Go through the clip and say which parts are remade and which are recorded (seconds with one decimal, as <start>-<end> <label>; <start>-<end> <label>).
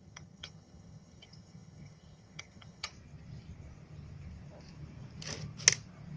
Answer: 0.0-2.9 remade; 2.9-6.2 recorded